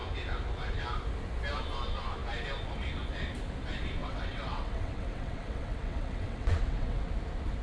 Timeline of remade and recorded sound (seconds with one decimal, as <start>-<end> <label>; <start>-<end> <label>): 0.0-4.0 recorded; 4.0-7.1 remade; 7.1-7.6 recorded